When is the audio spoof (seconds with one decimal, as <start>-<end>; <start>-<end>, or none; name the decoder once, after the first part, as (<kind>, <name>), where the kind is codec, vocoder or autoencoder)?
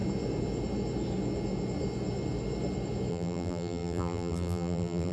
3.1-5.1 (vocoder, BigVGAN v2)